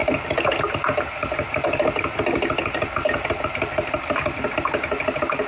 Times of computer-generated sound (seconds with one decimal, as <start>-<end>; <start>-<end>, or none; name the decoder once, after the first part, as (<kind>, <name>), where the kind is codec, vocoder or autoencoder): none